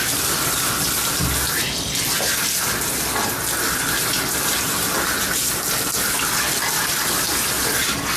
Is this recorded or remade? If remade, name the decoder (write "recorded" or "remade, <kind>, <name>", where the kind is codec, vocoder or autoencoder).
recorded